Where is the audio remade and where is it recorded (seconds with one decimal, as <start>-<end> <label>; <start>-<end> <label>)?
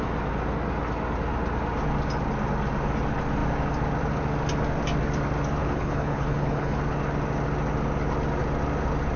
0.0-5.6 recorded; 5.6-6.8 remade; 6.8-9.2 recorded